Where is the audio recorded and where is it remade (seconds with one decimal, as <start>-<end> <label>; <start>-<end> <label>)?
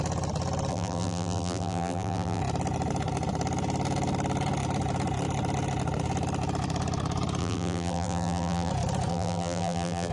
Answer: 0.0-0.7 recorded; 0.7-2.4 remade; 2.4-7.4 recorded; 7.4-8.7 remade; 8.7-9.1 recorded; 9.1-10.1 remade